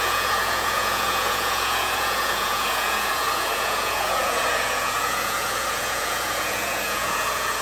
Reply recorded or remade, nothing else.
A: remade